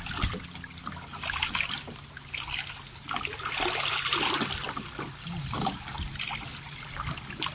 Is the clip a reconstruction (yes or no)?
no